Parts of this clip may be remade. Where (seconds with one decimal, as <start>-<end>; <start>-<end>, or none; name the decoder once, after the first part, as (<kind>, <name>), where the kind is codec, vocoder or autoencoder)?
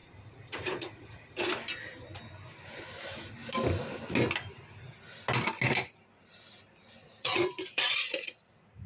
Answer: 0.0-1.3 (vocoder, Vocos); 7.0-8.9